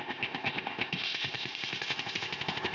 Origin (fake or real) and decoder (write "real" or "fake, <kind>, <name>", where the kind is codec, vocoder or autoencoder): fake, codec, ZipCodec